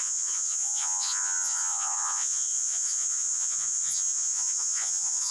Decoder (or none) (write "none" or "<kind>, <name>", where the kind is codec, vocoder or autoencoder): vocoder, Vocos